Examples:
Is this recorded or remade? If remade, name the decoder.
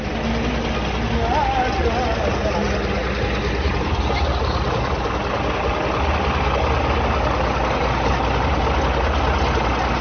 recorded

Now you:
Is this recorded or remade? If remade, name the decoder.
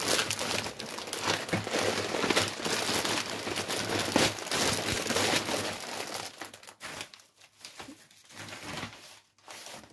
recorded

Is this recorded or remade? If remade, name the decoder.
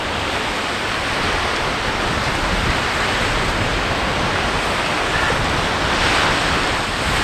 recorded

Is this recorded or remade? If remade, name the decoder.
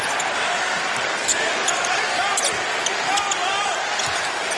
recorded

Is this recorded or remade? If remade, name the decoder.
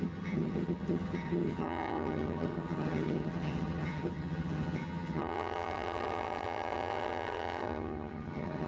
remade, vocoder, HiFi-GAN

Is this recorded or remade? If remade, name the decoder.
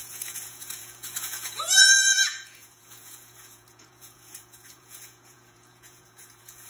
remade, vocoder, Vocos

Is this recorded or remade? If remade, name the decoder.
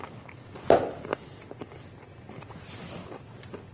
recorded